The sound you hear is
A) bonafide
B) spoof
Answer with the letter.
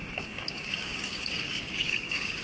B